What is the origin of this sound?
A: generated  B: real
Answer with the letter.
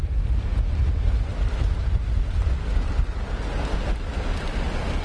B